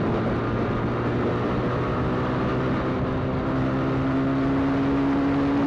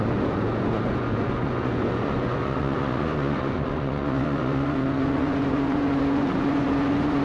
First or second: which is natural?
first